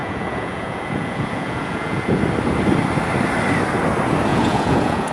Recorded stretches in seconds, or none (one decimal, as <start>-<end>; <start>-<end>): 2.2-4.3